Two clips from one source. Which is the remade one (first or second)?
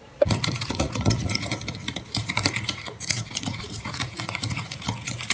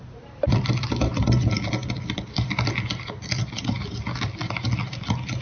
first